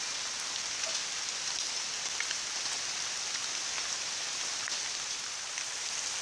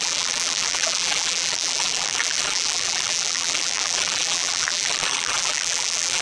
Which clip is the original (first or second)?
first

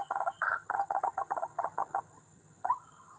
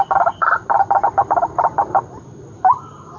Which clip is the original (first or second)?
second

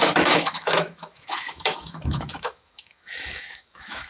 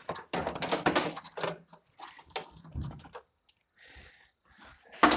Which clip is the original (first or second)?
second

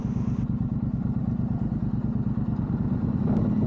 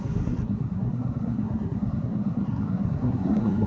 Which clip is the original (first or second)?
first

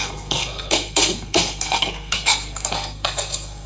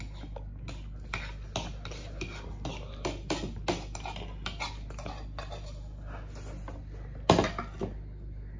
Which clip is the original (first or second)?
second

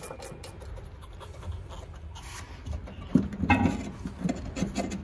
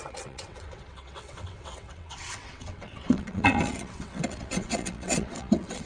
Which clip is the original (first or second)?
first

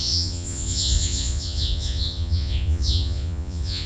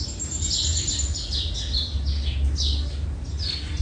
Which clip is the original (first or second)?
second